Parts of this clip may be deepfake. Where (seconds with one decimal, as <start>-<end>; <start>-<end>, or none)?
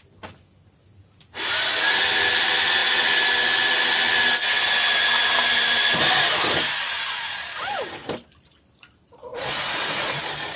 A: 9.3-10.2